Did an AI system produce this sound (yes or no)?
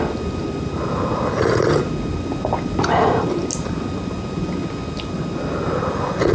no